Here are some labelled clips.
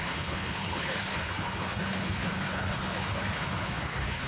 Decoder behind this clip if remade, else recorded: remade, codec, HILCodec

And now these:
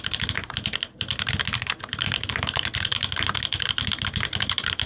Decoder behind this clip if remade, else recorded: recorded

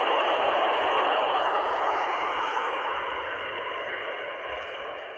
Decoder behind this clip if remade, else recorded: remade, codec, HILCodec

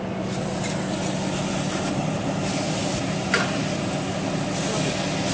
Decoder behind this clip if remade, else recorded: recorded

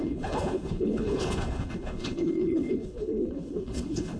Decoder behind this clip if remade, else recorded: remade, codec, HILCodec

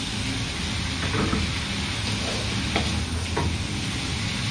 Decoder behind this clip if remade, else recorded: recorded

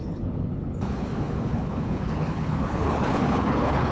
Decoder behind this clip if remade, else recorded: remade, codec, HILCodec